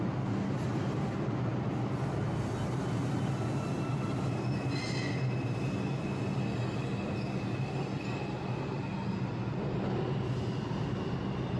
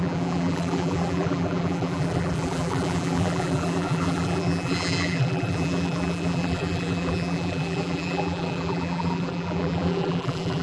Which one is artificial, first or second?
second